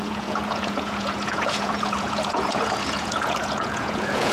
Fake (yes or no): yes